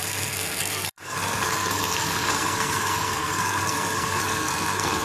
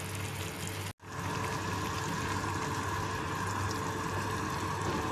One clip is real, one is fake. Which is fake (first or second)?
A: first